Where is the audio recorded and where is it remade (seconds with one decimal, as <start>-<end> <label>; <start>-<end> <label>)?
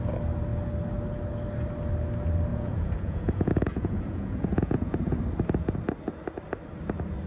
0.0-2.5 recorded; 2.5-5.2 remade; 5.2-7.3 recorded